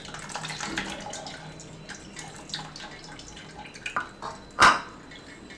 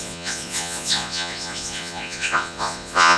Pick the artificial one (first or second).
second